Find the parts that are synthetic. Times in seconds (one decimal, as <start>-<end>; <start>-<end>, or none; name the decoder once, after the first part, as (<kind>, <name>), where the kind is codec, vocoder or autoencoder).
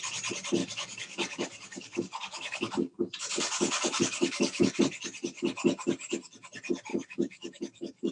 0.6-4.8 (codec, DAC); 6.9-8.1